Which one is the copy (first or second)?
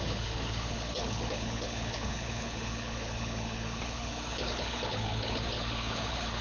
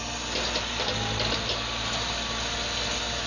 first